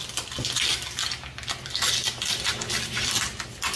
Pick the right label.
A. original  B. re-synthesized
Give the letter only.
A